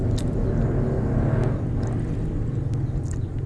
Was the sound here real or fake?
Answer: real